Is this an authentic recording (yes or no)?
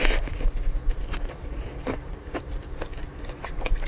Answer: yes